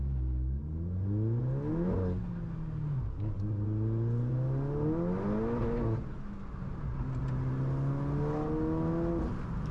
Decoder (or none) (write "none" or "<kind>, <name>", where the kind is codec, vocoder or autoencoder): none